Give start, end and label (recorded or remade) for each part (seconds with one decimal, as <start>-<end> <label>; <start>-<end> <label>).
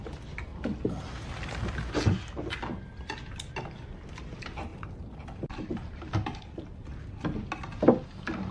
0.0-8.5 recorded